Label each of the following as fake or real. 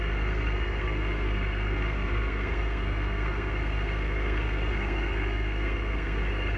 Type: fake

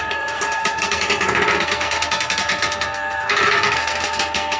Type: fake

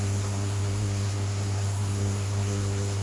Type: fake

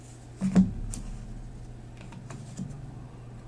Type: real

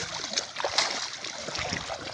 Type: real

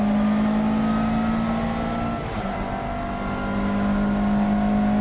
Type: real